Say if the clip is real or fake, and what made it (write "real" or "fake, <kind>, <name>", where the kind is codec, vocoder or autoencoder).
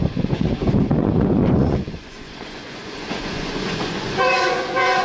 fake, vocoder, Vocos